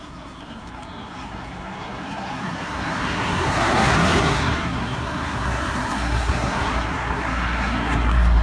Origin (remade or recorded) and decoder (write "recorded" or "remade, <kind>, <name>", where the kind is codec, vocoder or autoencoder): remade, codec, SNAC